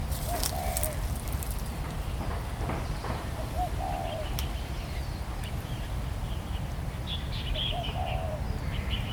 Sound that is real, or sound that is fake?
fake